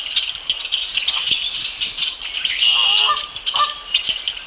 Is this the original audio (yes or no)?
yes